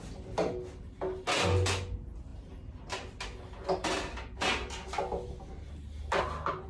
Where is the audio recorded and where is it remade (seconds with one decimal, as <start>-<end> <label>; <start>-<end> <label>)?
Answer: 0.0-6.7 recorded